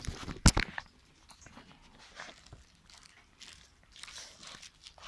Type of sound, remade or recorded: recorded